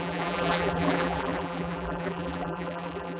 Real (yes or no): no